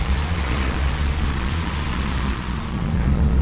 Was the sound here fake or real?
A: fake